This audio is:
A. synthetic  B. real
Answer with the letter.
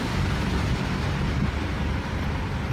B